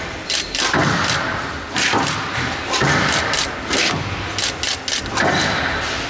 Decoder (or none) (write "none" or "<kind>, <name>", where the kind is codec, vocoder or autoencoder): none